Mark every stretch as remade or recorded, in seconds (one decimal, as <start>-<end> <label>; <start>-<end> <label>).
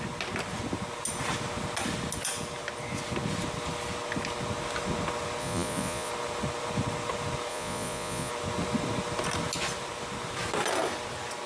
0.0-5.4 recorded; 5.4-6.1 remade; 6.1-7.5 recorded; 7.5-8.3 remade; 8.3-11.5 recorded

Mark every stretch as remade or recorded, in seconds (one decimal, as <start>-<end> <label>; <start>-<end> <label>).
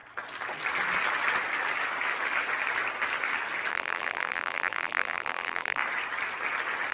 0.0-3.7 recorded; 3.7-5.8 remade; 5.8-6.9 recorded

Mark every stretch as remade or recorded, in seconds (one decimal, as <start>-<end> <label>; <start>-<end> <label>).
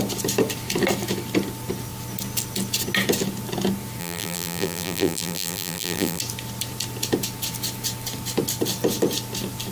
0.0-4.0 recorded; 4.0-6.2 remade; 6.2-9.7 recorded